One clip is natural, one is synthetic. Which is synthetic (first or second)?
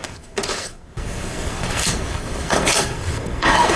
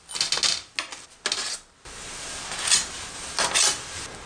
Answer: first